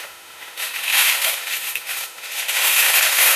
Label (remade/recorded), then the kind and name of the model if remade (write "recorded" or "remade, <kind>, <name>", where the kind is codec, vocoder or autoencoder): remade, autoencoder, DAC-VAE